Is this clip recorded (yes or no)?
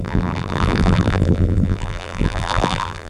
no